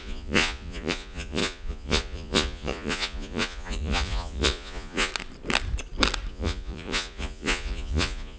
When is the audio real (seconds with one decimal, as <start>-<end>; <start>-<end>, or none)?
5.1-6.3